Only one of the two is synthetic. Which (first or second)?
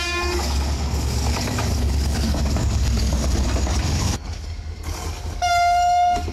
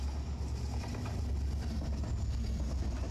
first